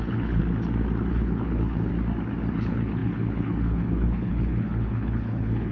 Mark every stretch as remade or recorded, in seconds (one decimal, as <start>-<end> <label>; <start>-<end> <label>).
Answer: 0.0-0.4 remade; 0.4-1.1 recorded; 1.1-1.9 remade; 1.9-2.5 recorded; 2.5-5.7 remade